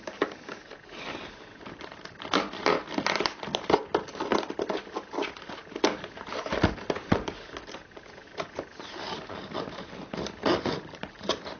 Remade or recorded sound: recorded